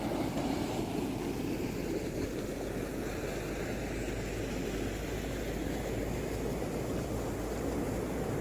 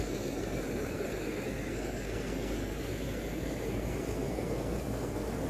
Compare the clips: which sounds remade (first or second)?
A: second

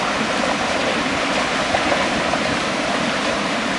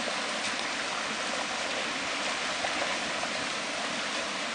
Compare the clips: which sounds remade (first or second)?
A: first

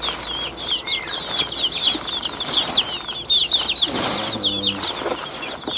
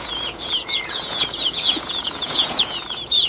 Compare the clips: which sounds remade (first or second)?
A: second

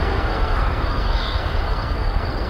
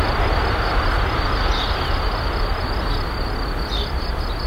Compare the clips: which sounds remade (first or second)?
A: first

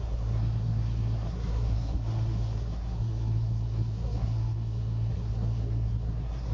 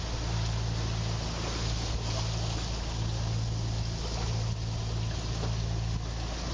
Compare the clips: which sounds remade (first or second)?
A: first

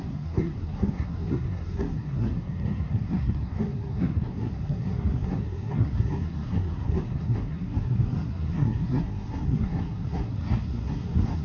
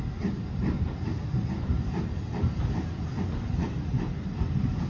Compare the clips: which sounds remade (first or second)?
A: first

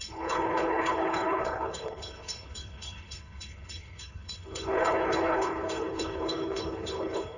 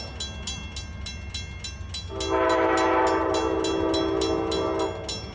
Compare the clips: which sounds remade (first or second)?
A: first